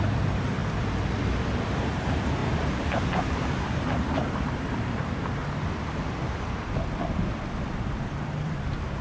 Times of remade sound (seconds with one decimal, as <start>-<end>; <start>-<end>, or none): 0.0-0.6; 1.6-5.4; 7.5-9.0